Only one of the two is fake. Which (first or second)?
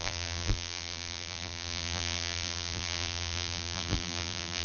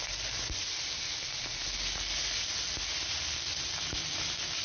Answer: first